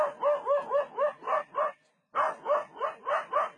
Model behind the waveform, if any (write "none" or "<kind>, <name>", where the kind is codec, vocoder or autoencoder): none